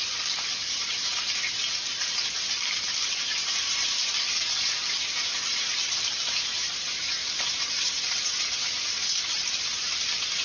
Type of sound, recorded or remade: remade